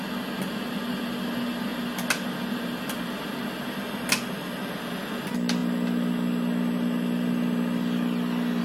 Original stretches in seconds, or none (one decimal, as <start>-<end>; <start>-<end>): 0.0-8.6